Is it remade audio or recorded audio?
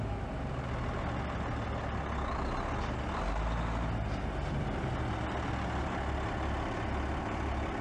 recorded